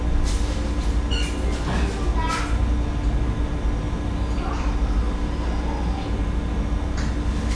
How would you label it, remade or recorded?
recorded